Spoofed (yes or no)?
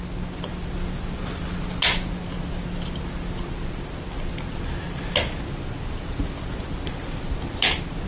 no